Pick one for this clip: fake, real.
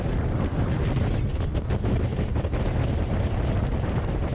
real